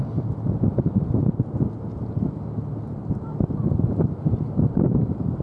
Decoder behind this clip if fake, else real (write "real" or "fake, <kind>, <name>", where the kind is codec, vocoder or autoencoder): real